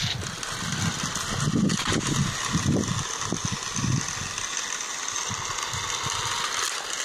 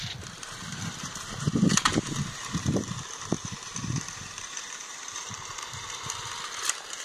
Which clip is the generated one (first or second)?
second